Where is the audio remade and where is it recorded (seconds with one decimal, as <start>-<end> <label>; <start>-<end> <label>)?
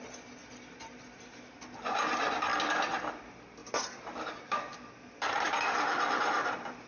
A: 0.0-2.5 remade; 2.5-3.1 recorded; 3.1-6.9 remade